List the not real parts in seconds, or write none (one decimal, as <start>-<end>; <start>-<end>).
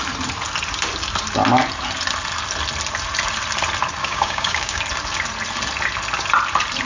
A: 4.0-4.8